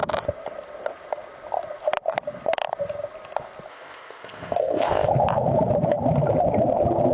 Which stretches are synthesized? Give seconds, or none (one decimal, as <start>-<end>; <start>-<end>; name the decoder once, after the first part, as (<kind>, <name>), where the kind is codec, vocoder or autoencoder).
3.7-5.1 (codec, ZipCodec)